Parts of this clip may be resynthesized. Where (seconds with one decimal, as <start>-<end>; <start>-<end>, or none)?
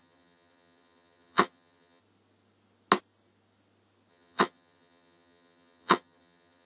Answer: 0.0-2.0; 4.1-6.7